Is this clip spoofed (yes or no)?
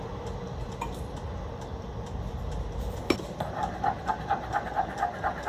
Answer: no